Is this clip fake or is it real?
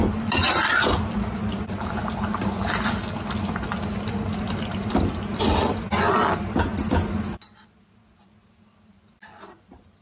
real